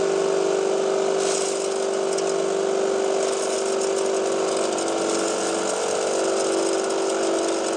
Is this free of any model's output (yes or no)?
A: yes